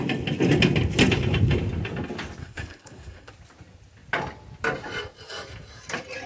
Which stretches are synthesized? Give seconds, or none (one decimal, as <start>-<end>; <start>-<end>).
2.4-3.3